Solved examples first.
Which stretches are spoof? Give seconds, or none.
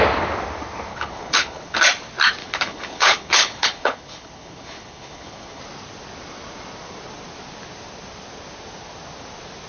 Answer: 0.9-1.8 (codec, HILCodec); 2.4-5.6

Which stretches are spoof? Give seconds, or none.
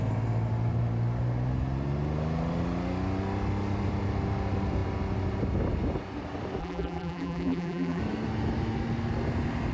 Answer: 6.6-8.0 (vocoder, BigVGAN v2)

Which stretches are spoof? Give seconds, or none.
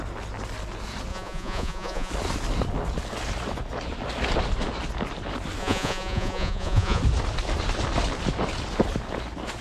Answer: 1.1-2.1 (vocoder, Vocos); 5.6-7.0